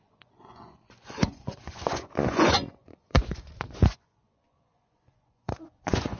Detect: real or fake fake